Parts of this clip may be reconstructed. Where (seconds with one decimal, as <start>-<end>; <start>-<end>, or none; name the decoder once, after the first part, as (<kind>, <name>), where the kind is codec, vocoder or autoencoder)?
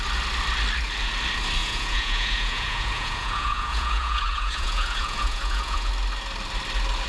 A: 1.6-5.9 (vocoder, Vocos)